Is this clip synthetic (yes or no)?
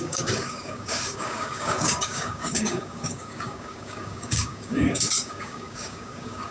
yes